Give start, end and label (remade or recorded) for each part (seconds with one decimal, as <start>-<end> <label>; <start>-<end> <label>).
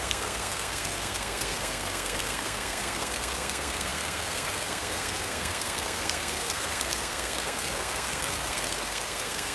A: 0.0-9.5 remade